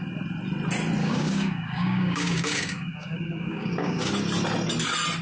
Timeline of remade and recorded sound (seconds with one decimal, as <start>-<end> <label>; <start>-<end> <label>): 0.0-1.0 recorded; 1.0-4.1 remade; 4.1-5.2 recorded